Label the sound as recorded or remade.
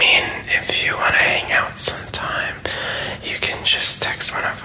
recorded